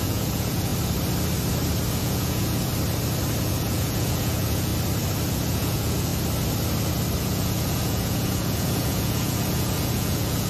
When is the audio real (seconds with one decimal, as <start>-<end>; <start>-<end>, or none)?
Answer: 0.7-2.0; 2.7-3.4; 4.7-5.3; 6.1-7.2